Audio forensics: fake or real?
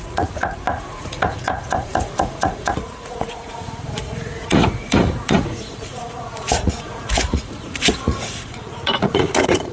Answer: fake